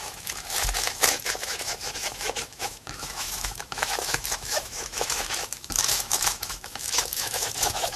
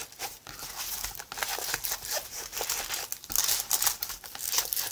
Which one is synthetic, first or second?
first